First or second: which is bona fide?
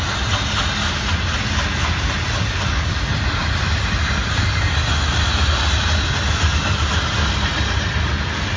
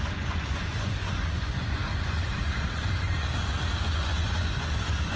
first